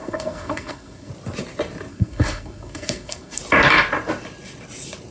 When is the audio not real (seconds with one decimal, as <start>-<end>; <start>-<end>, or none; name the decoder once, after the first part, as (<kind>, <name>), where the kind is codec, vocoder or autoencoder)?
0.0-1.1 (codec, SNAC); 1.9-3.4